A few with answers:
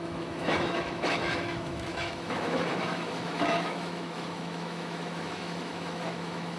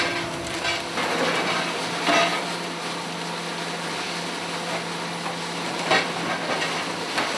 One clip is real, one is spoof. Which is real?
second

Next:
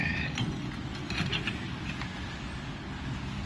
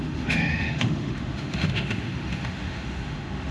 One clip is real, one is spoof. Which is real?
first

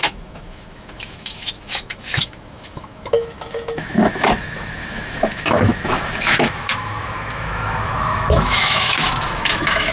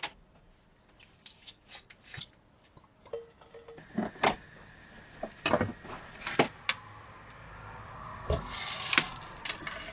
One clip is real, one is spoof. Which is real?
second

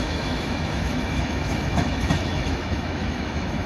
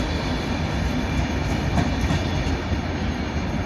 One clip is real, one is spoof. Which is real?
second